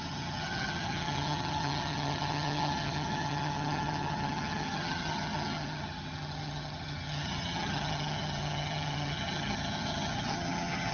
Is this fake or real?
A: fake